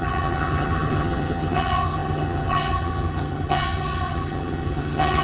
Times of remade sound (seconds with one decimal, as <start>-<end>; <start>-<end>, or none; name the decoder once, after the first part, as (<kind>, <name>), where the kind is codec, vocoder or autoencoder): 0.0-5.2 (vocoder, HiFi-GAN)